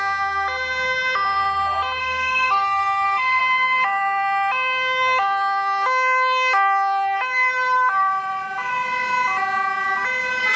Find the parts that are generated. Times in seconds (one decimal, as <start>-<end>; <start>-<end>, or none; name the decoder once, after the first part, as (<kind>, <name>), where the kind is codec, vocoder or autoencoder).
2.0-3.4 (codec, SNAC)